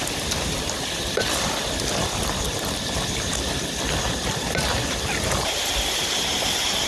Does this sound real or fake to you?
real